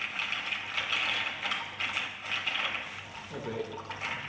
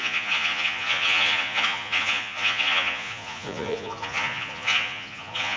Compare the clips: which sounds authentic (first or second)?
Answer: first